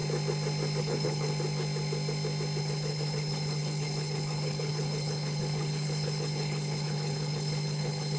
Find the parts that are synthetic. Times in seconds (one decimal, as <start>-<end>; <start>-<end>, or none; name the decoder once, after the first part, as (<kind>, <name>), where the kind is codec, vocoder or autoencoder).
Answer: 0.8-1.3 (codec, HILCodec); 2.6-8.2